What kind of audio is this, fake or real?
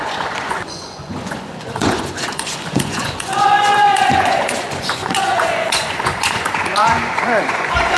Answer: fake